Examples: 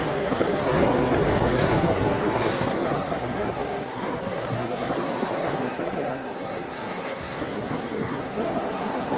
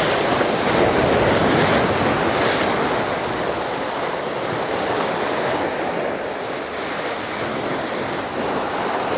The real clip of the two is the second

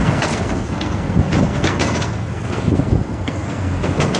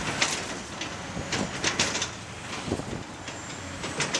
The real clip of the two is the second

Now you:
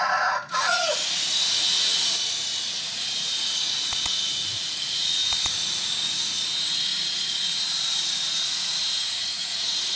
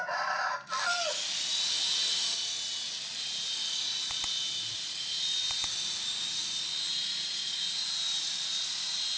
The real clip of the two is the second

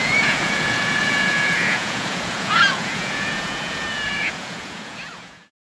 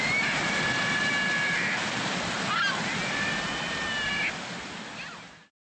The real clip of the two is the second